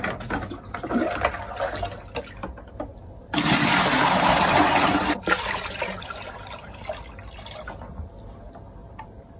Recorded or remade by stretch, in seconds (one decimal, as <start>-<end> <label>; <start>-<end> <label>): 0.0-2.9 recorded; 2.9-6.8 remade; 6.8-8.8 recorded; 8.8-9.4 remade